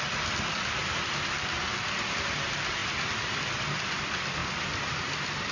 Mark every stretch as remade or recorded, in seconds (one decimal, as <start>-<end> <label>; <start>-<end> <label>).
0.0-5.5 recorded